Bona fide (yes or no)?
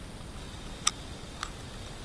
yes